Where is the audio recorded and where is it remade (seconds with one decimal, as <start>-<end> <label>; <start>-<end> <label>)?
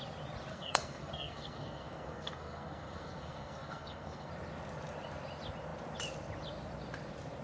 0.0-0.5 recorded; 0.5-4.3 remade; 4.3-7.4 recorded